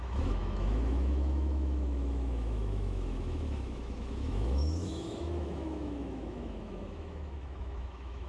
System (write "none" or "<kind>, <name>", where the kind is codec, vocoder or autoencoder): autoencoder, DAC-VAE